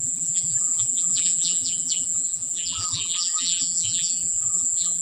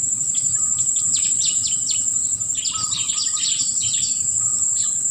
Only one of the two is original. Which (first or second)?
second